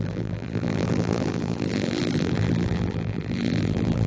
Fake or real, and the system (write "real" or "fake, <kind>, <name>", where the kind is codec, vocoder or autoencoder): fake, vocoder, BigVGAN v2